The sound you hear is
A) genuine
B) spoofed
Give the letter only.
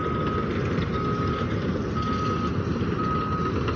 A